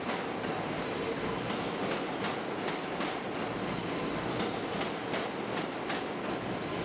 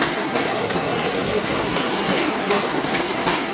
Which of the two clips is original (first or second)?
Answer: first